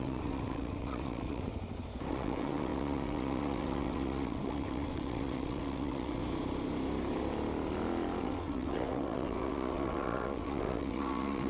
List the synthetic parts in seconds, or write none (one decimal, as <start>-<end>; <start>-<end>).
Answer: 0.0-1.5; 2.1-6.2; 8.2-11.5